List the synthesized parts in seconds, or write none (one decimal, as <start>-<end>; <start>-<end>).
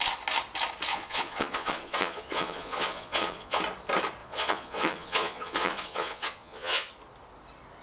0.9-3.6; 4.2-6.9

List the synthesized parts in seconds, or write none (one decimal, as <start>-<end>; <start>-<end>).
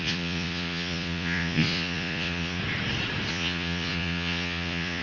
0.0-2.6; 3.3-5.0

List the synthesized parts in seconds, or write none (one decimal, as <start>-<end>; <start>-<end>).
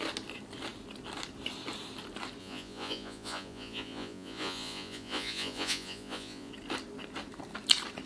2.4-6.5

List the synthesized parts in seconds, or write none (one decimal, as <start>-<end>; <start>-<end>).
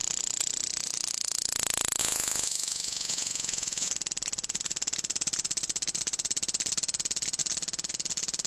2.0-3.9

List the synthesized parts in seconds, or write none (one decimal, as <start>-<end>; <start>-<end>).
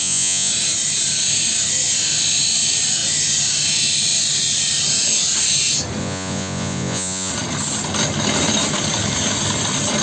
0.0-0.5; 6.0-7.3